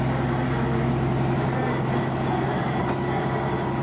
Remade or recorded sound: recorded